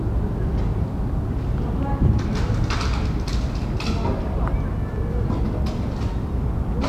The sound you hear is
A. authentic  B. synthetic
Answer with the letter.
A